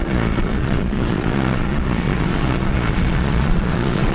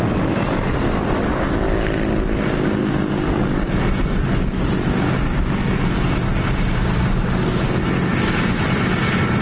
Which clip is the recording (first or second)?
second